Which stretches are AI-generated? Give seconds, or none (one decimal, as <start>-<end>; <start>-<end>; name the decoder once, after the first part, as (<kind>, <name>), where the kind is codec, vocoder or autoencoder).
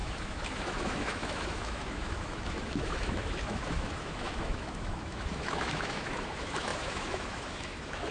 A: 0.0-8.1 (autoencoder, DAC-VAE)